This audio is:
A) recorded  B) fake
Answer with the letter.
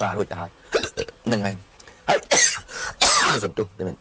A